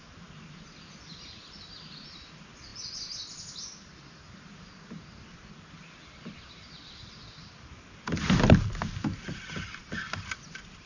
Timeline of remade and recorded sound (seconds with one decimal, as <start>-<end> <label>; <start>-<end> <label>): 0.0-10.9 recorded